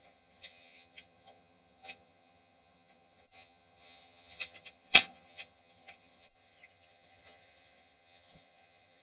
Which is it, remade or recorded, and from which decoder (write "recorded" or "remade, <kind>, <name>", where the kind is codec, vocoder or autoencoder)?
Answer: remade, vocoder, HiFi-GAN